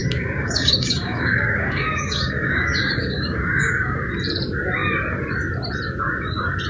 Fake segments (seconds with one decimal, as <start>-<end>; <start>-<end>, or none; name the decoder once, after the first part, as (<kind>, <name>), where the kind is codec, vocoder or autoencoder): 0.0-4.0 (codec, DAC)